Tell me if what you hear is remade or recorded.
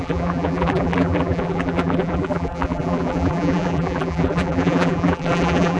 remade